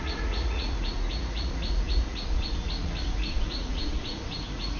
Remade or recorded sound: remade